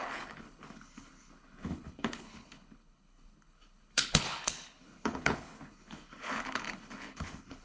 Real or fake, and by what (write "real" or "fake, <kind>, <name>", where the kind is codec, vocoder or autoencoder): fake, codec, HILCodec